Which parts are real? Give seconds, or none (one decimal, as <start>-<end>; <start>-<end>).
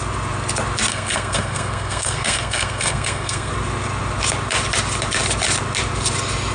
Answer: 0.0-0.9; 3.5-6.5